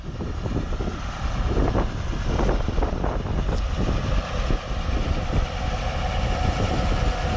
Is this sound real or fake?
real